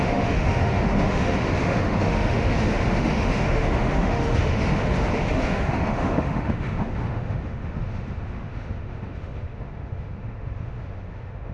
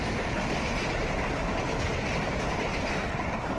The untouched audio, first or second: second